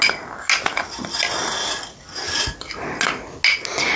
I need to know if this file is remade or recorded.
recorded